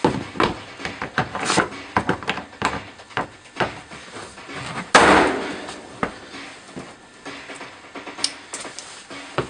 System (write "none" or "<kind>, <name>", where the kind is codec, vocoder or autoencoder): none